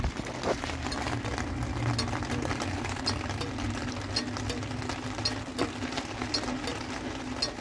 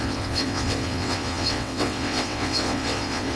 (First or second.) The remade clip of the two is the second